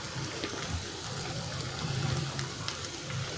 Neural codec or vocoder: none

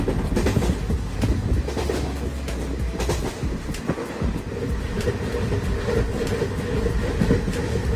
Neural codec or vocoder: none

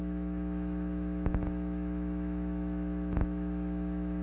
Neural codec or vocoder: autoencoder, DAC-VAE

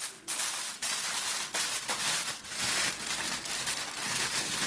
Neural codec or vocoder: none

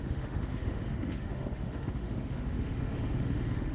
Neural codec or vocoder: autoencoder, DAC-VAE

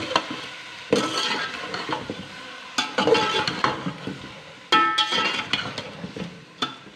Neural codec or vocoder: none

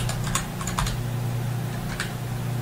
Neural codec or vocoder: none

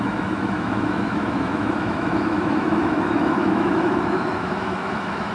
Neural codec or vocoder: autoencoder, DAC-VAE